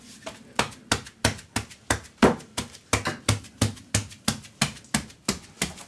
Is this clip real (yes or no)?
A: yes